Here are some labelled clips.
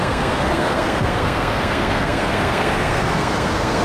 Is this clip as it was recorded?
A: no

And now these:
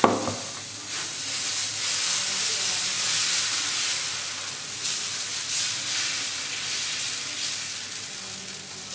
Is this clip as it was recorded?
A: yes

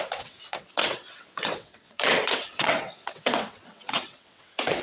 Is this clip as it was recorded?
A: no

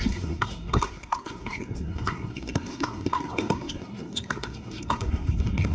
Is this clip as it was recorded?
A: no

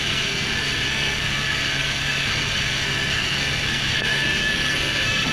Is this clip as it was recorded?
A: no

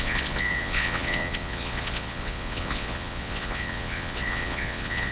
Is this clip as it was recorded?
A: no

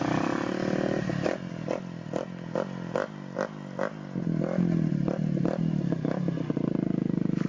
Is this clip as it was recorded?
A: yes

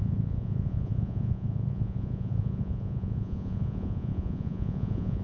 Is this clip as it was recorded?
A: no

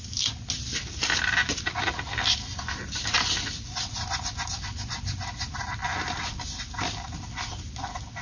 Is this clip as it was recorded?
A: yes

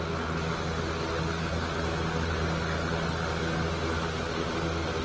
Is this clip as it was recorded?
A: yes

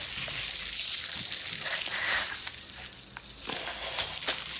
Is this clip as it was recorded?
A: yes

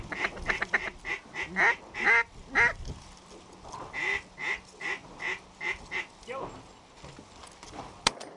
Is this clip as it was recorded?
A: yes